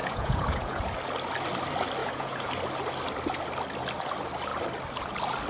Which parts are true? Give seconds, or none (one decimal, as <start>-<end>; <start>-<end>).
0.8-2.0; 2.5-5.5